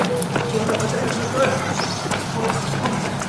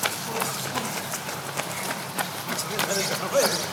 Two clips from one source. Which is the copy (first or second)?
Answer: second